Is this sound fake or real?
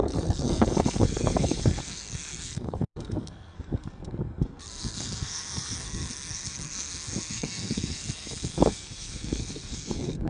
fake